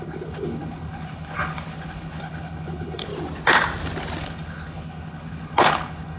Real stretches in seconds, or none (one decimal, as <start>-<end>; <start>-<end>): 3.1-4.2